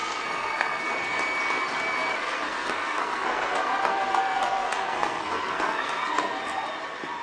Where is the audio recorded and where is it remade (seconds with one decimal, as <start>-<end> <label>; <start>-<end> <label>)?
0.0-0.9 remade; 0.9-2.1 recorded; 2.1-6.4 remade; 6.4-7.2 recorded